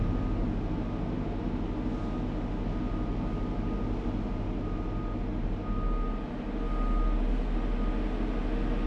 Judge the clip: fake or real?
real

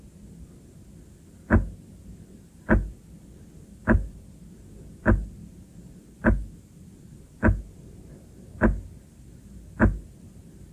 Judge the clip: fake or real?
real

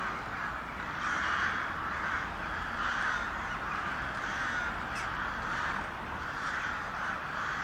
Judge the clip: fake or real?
fake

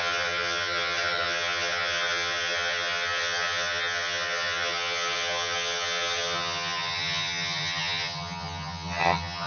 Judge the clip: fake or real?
fake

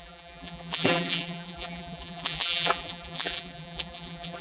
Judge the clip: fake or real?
fake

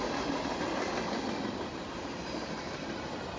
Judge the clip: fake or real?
real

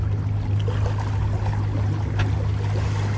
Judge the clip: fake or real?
real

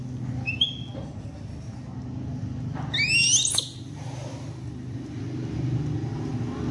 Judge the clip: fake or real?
real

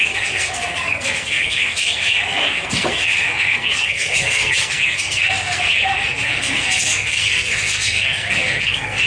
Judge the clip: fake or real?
fake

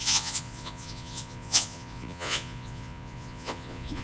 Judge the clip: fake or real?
fake